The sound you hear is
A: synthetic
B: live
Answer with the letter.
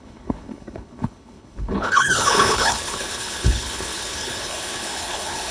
A